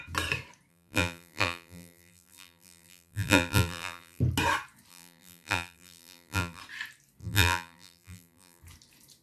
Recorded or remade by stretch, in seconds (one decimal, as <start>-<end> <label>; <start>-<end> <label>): 0.0-0.7 recorded; 0.7-4.2 remade; 4.2-4.9 recorded; 4.9-6.6 remade; 6.6-7.2 recorded; 7.2-8.6 remade; 8.6-9.2 recorded